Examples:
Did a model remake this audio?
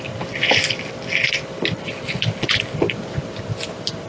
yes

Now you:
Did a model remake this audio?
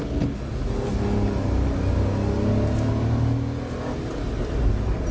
no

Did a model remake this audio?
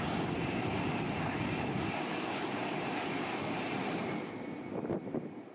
no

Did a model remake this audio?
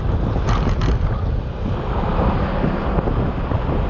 no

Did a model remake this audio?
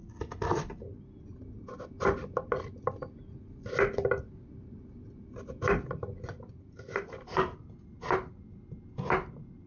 no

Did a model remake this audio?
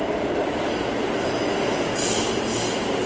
no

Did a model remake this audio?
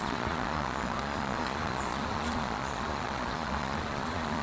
yes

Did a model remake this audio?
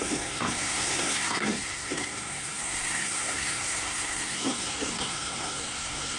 yes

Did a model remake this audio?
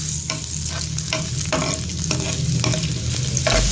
no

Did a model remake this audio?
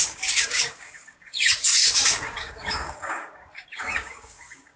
yes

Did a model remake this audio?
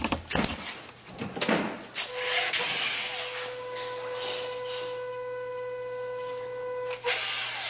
no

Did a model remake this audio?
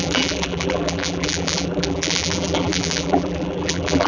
yes